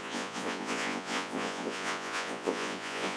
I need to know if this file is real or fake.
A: fake